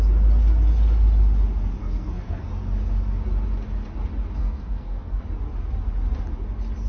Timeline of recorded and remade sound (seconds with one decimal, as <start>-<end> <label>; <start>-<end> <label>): 0.0-1.8 recorded; 1.8-2.5 remade; 2.5-4.4 recorded; 4.4-5.2 remade; 5.2-6.9 recorded